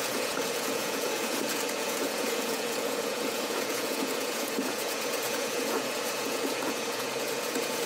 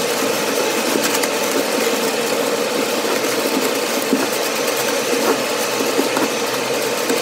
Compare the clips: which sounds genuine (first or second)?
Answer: second